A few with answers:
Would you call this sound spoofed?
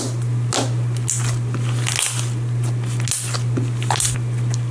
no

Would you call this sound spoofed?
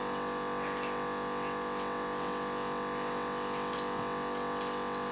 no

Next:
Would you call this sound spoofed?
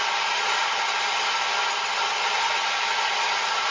no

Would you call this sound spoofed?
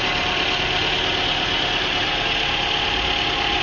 no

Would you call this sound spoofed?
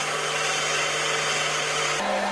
no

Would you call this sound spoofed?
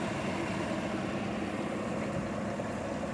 no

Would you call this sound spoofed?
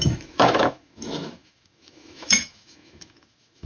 yes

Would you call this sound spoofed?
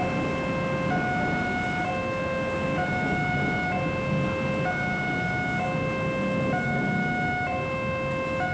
no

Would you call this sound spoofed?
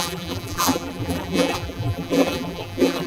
yes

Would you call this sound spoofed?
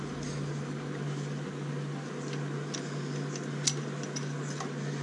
no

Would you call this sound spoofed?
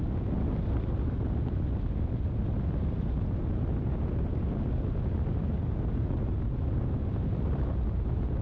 no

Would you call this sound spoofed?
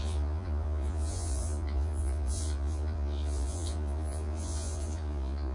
yes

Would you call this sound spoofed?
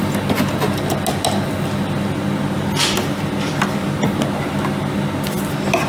no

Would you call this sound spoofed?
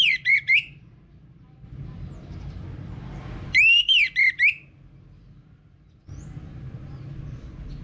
no